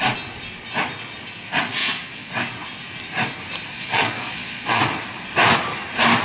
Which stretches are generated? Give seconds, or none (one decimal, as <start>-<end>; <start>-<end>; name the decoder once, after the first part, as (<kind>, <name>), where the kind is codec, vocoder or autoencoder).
1.8-2.3 (vocoder, Vocos); 3.7-4.8